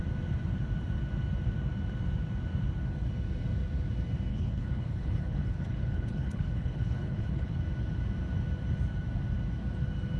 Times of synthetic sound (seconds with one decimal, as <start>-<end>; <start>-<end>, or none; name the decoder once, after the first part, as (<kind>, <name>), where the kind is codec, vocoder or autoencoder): 4.3-7.6 (codec, HILCodec)